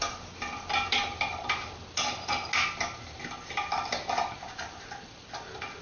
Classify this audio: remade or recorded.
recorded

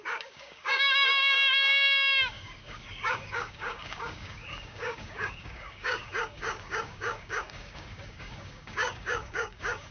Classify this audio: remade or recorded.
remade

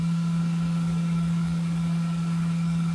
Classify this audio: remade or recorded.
remade